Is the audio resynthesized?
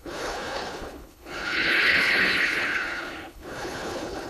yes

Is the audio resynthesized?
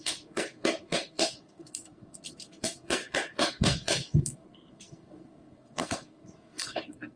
yes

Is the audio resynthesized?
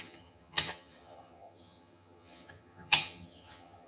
yes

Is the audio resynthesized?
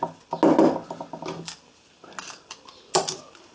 no